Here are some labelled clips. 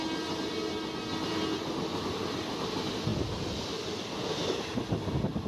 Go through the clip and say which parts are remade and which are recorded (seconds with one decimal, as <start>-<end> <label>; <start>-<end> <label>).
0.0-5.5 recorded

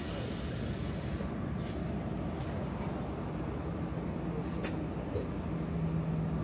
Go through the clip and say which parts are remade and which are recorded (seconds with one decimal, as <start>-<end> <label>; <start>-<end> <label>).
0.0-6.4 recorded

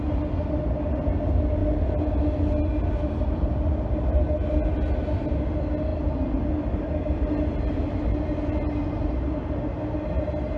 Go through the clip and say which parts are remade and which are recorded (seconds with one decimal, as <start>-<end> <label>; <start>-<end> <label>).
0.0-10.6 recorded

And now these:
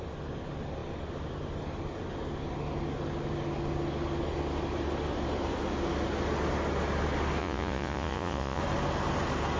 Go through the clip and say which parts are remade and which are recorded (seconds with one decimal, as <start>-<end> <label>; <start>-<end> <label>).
0.0-7.4 recorded; 7.4-8.6 remade; 8.6-9.6 recorded